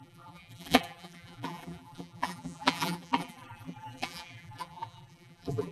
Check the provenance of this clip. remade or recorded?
remade